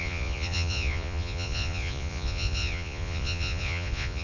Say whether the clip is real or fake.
fake